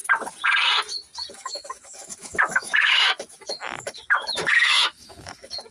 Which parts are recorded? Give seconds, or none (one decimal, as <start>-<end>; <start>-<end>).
0.0-1.3

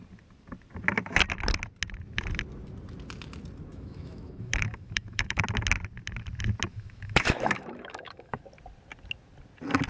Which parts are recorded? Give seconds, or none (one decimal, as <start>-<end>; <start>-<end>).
0.0-3.7; 5.4-6.7; 8.4-9.9

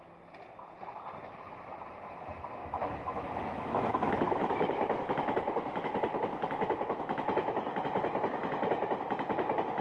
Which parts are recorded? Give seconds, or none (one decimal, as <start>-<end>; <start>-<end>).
0.0-2.6; 4.4-9.8